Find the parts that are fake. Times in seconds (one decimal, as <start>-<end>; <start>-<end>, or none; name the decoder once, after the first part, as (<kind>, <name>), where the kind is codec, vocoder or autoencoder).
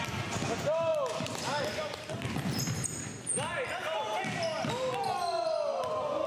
none